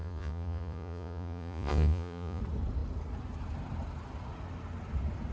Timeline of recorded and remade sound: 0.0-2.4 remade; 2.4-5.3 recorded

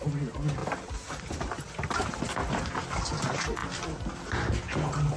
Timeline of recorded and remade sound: 0.0-0.6 recorded; 0.6-2.3 remade; 2.3-5.2 recorded